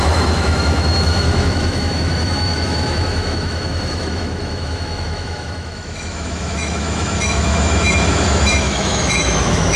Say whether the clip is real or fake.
fake